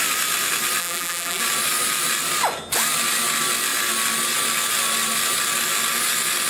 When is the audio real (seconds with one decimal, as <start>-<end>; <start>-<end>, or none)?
0.0-0.8; 1.4-6.5